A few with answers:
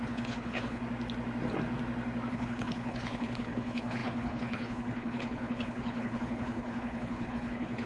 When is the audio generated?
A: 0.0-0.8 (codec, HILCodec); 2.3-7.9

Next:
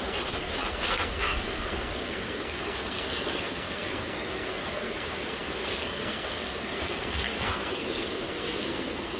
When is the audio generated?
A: 0.0-9.2 (codec, SNAC)

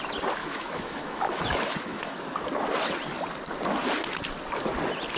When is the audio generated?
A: 0.4-2.0 (autoencoder, DAC-VAE)

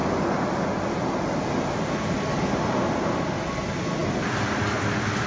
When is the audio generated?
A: none

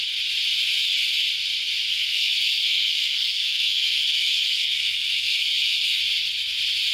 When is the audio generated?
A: 1.9-6.0 (codec, SNAC)

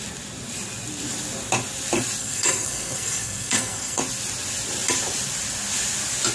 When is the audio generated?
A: 2.2-4.0 (codec, SNAC)

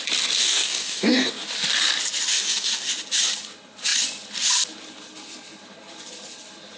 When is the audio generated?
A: 0.4-1.3 (codec, DAC); 2.3-2.9